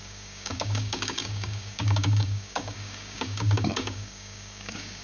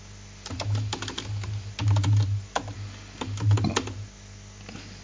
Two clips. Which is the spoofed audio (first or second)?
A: first